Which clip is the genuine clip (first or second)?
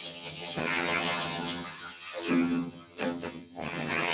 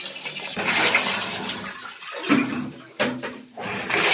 second